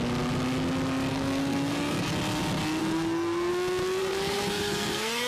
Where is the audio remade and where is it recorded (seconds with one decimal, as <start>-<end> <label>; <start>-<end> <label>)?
0.0-1.1 recorded; 1.1-2.1 remade; 2.1-2.8 recorded; 2.8-3.5 remade; 3.5-4.0 recorded; 4.0-5.3 remade